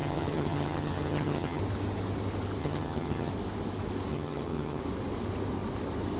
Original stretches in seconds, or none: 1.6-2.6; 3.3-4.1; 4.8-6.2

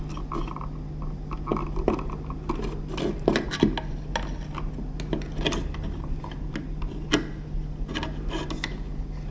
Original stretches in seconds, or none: 0.0-9.3

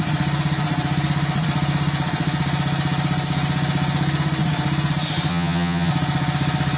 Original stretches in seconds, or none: 0.0-5.3; 5.9-6.8

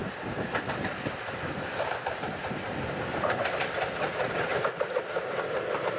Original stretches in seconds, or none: 0.0-6.0

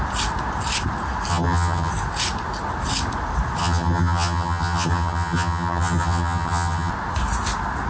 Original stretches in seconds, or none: 0.0-1.3; 1.9-3.6; 6.9-7.9

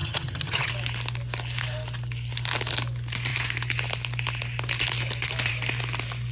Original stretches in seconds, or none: 0.7-6.3

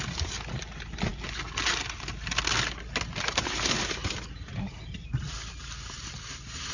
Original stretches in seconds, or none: 0.0-6.7

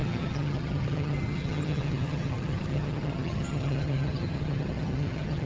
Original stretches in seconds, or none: none